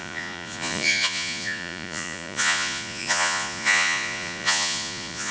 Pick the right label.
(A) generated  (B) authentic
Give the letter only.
A